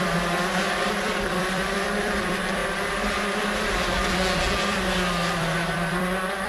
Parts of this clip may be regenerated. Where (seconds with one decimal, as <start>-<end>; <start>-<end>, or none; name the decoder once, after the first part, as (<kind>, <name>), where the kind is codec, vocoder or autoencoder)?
0.0-2.6 (vocoder, BigVGAN v2); 4.6-6.5